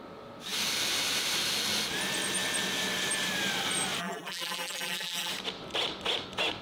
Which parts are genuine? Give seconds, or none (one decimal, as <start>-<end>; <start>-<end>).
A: 0.0-4.0; 5.3-6.6